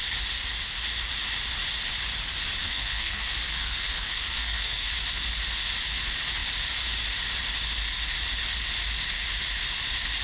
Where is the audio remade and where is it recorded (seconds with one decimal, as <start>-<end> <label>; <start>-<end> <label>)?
0.0-2.6 recorded; 2.6-4.9 remade; 4.9-10.2 recorded